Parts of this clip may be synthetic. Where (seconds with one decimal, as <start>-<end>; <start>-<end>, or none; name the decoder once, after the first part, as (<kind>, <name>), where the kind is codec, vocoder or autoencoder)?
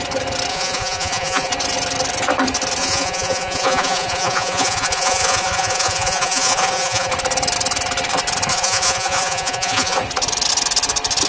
0.5-1.5 (vocoder, Vocos); 2.8-7.1; 8.5-10.0